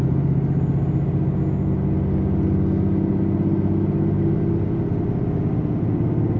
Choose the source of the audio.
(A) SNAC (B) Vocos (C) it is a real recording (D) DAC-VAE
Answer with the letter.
C